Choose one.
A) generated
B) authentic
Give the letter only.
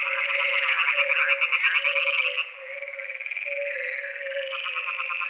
B